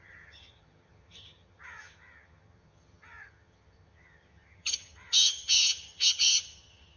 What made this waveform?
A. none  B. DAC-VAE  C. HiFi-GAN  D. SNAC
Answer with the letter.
C